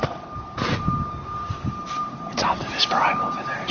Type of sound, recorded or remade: remade